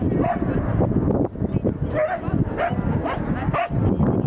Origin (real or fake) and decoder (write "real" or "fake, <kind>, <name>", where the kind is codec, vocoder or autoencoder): real